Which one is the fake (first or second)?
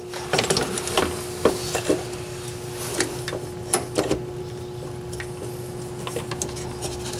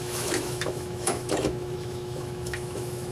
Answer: second